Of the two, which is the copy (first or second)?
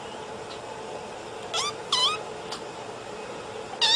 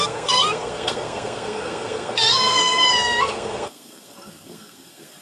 second